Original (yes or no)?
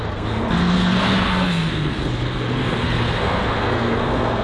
no